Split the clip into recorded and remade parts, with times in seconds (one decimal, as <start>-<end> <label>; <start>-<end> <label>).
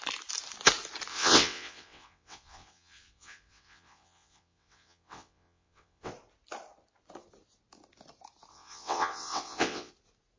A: 0.0-1.1 recorded; 1.1-6.1 remade; 6.1-8.5 recorded; 8.5-9.9 remade; 9.9-10.4 recorded